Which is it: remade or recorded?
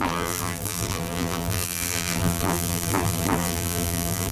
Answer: remade